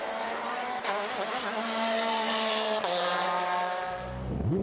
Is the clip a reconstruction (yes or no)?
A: yes